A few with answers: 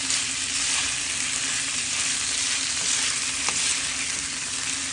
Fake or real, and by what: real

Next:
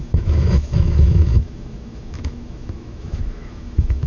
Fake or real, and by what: fake, autoencoder, DAC-VAE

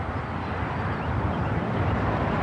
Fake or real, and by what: real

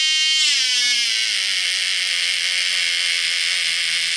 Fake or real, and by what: real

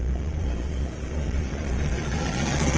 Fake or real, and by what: fake, vocoder, Vocos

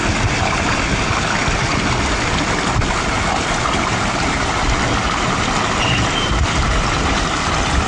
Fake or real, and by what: real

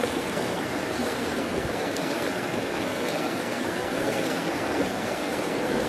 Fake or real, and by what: fake, codec, SNAC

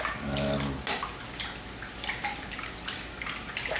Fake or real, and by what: real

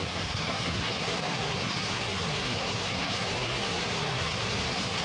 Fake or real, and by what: fake, codec, SNAC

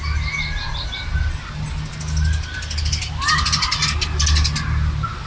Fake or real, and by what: real